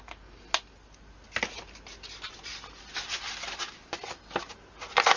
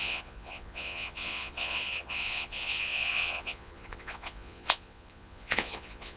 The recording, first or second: first